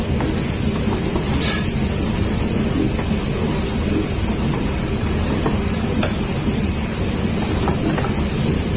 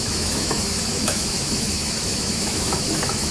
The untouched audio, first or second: first